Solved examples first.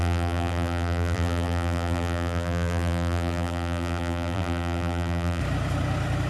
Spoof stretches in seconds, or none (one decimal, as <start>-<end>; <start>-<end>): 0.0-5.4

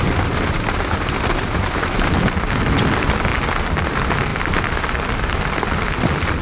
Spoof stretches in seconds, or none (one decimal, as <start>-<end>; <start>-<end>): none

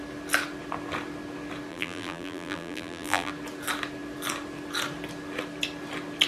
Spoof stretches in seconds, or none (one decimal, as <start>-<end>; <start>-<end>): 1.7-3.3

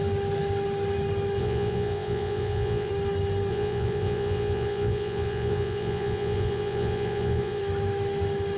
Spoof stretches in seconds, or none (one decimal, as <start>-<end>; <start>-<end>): 1.4-2.9; 3.5-7.6

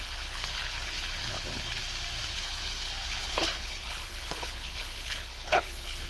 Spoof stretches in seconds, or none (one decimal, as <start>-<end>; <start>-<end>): 0.0-1.8; 2.3-6.1

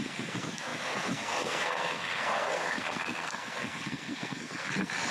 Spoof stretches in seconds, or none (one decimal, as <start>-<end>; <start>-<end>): 0.0-5.1

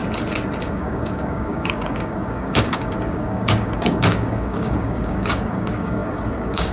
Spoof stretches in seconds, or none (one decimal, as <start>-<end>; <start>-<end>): 0.6-6.7

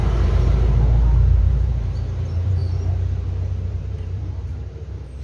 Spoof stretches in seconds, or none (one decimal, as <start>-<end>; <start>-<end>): 1.4-2.6; 3.6-5.2